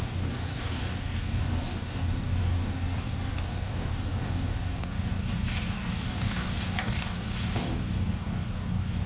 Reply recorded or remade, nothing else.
remade